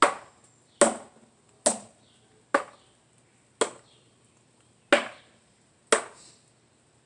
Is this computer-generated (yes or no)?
no